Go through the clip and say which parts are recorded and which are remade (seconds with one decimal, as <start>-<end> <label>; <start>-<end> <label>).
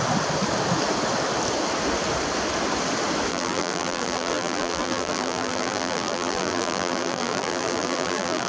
0.0-3.3 recorded; 3.3-8.5 remade